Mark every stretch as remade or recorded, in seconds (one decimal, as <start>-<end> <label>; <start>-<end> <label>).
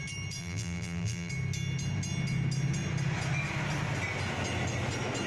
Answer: 0.0-0.4 recorded; 0.4-1.3 remade; 1.3-5.3 recorded